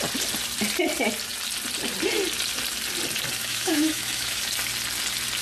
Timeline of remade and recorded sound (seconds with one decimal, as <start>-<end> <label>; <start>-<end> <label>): 0.0-3.4 recorded; 3.4-4.4 remade; 4.4-5.4 recorded